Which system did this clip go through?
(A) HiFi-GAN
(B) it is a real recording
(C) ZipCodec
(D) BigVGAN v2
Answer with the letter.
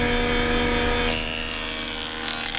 B